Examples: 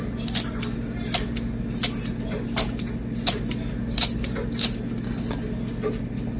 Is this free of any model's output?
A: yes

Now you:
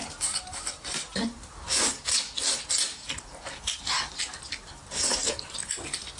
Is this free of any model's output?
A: yes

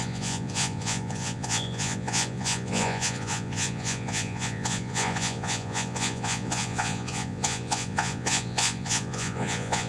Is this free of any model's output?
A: no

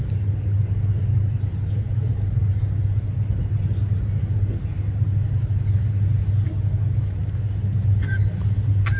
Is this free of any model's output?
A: yes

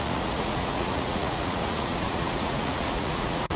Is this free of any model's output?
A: no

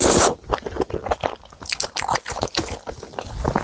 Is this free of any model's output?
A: yes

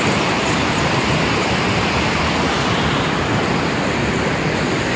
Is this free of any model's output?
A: yes